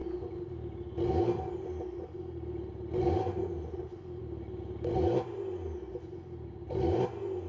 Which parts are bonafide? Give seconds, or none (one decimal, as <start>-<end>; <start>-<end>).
0.0-7.5

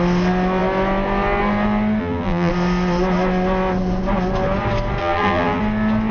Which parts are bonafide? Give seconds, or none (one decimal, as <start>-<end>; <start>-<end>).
0.0-2.0; 2.5-5.0; 5.6-6.1

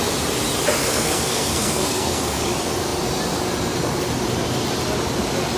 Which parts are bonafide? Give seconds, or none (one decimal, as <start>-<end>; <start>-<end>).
0.0-0.8; 2.5-5.6

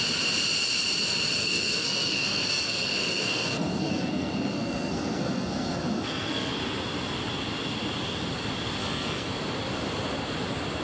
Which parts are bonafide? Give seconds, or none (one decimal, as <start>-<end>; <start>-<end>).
0.0-1.4; 6.5-8.8; 9.3-10.8